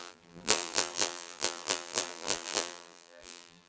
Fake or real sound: fake